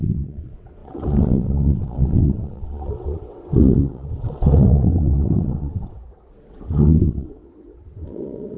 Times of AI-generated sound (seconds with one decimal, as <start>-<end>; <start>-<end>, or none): 0.0-8.6